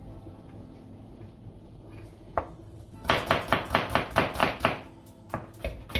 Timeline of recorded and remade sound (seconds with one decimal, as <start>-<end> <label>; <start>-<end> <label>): 0.0-2.4 remade; 2.4-3.0 recorded; 3.0-3.9 remade; 3.9-6.0 recorded